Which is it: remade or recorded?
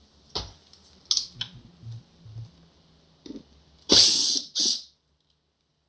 recorded